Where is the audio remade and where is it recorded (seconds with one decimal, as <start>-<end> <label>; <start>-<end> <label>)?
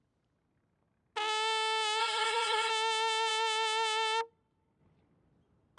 0.0-2.0 recorded; 2.0-2.7 remade; 2.7-5.8 recorded